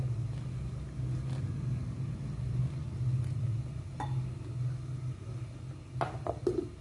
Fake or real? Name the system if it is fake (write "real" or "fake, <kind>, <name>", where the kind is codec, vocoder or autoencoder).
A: real